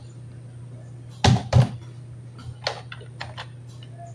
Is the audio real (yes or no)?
yes